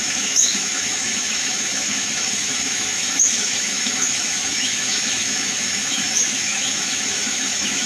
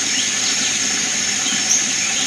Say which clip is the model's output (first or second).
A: first